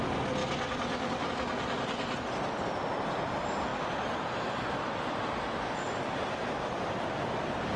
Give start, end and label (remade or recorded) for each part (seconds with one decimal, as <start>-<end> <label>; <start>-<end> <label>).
0.0-7.8 recorded